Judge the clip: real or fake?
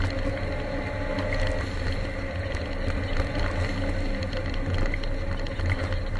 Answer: real